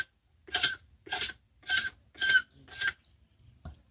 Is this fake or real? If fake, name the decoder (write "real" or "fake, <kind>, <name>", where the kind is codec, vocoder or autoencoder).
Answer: real